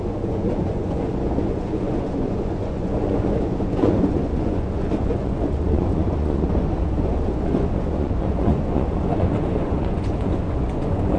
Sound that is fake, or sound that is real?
fake